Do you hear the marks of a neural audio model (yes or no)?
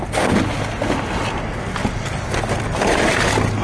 no